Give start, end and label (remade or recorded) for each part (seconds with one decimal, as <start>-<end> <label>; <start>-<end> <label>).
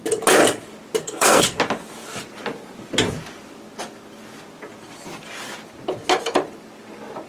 0.0-1.0 recorded; 1.0-1.6 remade; 1.6-7.3 recorded